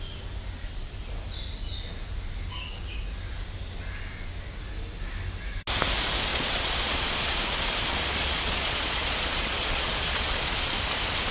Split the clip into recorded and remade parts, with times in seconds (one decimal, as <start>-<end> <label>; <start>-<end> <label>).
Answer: 0.0-6.3 recorded; 6.3-7.4 remade; 7.4-8.2 recorded; 8.2-10.7 remade; 10.7-11.3 recorded